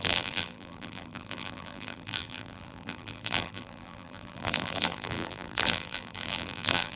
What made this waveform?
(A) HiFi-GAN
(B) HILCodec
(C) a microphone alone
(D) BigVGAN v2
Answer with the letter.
D